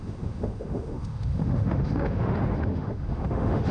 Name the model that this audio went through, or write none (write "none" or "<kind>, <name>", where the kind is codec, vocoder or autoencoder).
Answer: autoencoder, DAC-VAE